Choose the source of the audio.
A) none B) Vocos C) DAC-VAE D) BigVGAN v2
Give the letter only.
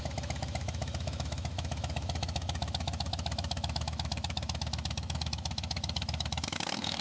C